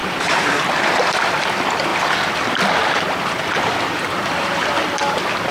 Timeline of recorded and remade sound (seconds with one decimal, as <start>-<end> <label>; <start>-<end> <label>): 0.0-1.9 recorded; 1.9-5.5 remade